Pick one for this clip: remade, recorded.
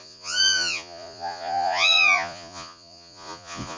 remade